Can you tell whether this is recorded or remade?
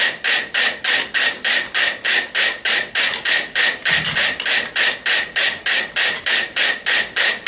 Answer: recorded